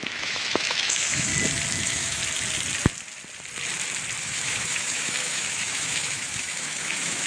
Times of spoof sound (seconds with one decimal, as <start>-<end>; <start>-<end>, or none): 0.0-1.3; 1.8-2.2; 4.2-7.3